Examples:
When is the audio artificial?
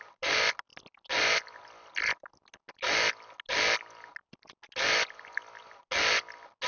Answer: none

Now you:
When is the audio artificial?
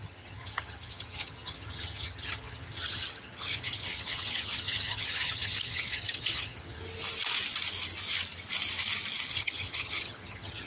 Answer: 0.0-6.8 (vocoder, HiFi-GAN); 9.3-10.7